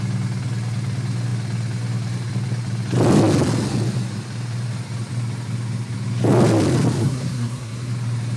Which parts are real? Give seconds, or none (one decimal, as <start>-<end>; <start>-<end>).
0.0-7.0; 7.9-8.4